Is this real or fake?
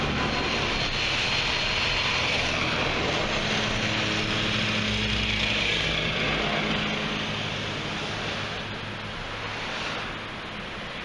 real